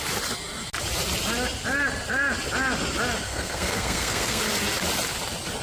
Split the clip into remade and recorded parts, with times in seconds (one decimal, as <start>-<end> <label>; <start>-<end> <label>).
0.0-3.3 recorded; 3.3-4.4 remade; 4.4-5.6 recorded